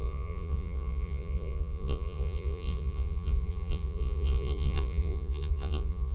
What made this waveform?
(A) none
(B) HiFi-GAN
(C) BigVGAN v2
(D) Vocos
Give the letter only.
D